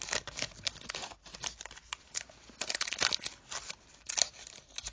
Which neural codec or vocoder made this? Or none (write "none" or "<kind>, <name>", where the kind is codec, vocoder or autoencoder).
none